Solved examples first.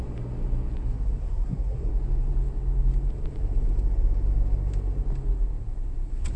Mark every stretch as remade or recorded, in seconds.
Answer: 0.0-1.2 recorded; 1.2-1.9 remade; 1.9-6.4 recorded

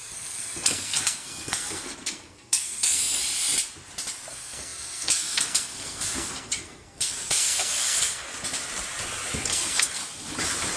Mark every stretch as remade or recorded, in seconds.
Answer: 0.0-3.2 remade; 3.2-4.3 recorded; 4.3-8.3 remade; 8.3-9.5 recorded; 9.5-10.0 remade; 10.0-10.8 recorded

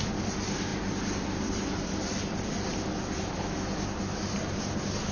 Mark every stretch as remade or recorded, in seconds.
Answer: 0.0-5.1 recorded

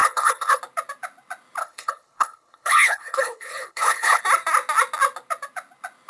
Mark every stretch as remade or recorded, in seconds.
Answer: 0.0-0.6 remade; 0.6-1.6 recorded; 1.6-4.2 remade; 4.2-6.1 recorded

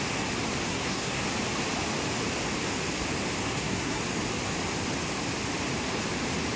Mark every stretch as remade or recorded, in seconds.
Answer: 0.0-0.7 recorded; 0.7-1.2 remade; 1.2-3.4 recorded; 3.4-4.0 remade; 4.0-6.6 recorded